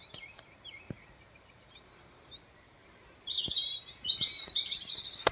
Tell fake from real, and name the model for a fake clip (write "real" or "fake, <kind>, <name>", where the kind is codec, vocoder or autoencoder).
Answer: fake, vocoder, BigVGAN v2